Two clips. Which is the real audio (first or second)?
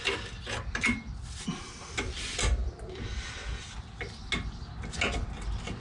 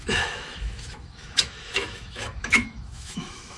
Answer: first